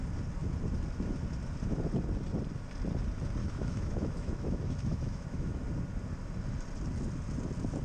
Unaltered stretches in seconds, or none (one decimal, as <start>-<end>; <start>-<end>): 0.0-3.4; 5.6-7.8